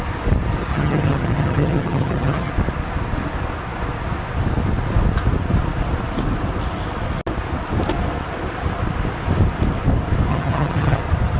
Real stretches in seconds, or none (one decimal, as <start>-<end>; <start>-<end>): 0.0-0.7; 2.5-10.3; 11.0-11.4